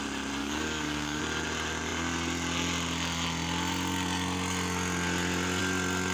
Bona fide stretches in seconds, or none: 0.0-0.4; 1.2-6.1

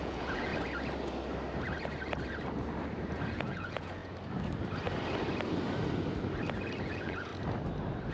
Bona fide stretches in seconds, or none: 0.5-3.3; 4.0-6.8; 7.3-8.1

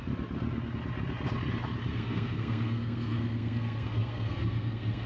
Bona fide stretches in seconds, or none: 0.0-1.9

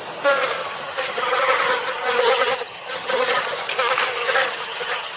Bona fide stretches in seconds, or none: 0.0-0.6; 3.7-4.2

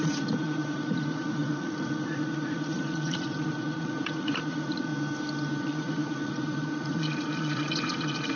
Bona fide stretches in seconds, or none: 4.9-5.6

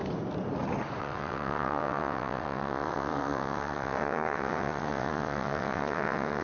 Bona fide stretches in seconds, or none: 0.0-1.0